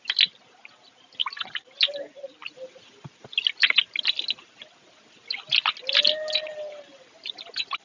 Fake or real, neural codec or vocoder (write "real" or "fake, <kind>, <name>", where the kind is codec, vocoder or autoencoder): real